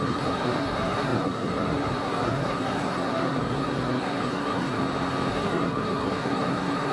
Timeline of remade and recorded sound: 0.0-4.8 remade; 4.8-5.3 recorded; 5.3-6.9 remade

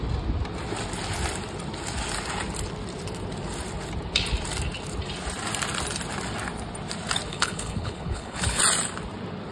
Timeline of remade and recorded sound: 0.0-7.3 recorded; 7.3-8.6 remade; 8.6-9.5 recorded

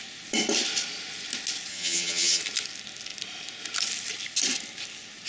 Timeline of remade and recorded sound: 0.0-1.7 recorded; 1.7-2.4 remade; 2.4-5.3 recorded

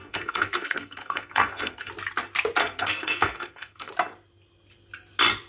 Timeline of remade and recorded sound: 0.0-1.9 remade; 1.9-2.6 recorded; 2.6-3.9 remade; 3.9-5.5 recorded

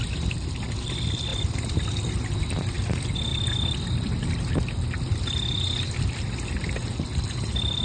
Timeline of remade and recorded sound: 0.0-7.8 recorded

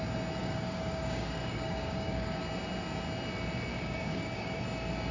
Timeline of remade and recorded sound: 0.0-0.4 recorded; 0.4-2.4 remade; 2.4-3.7 recorded; 3.7-4.6 remade; 4.6-5.1 recorded

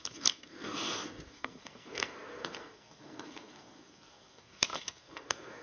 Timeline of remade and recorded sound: 0.0-5.6 remade

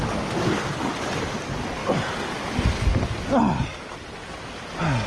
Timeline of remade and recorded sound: 0.0-5.1 recorded